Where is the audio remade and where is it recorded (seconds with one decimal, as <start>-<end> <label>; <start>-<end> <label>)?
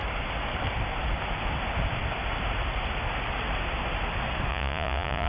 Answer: 0.0-4.5 recorded; 4.5-5.3 remade